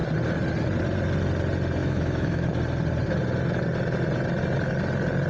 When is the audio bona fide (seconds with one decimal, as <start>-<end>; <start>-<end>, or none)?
0.0-1.8; 2.6-5.3